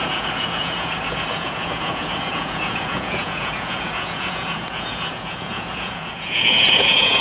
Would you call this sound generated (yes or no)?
yes